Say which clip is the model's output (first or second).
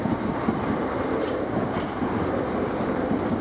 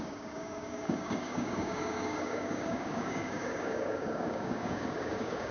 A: second